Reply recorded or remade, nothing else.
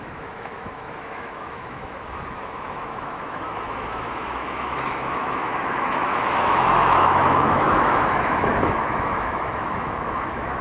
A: remade